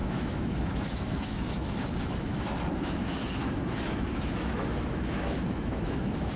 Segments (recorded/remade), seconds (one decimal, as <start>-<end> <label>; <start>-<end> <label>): 0.0-6.4 remade